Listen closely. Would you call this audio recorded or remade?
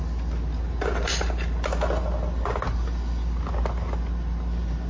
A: recorded